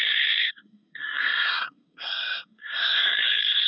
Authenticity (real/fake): fake